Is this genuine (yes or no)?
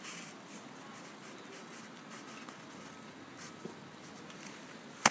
yes